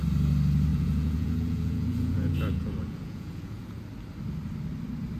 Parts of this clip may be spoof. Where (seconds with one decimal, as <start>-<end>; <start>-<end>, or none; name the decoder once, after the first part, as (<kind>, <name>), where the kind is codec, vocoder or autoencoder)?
0.7-3.8 (vocoder, Vocos)